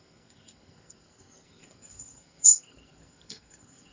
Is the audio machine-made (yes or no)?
yes